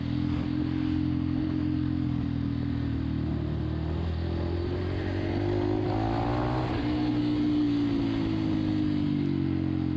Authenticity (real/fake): real